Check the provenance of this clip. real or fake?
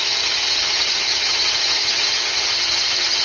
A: fake